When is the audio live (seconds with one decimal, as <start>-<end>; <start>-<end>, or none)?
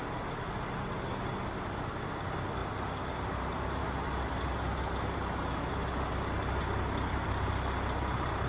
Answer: 0.0-8.5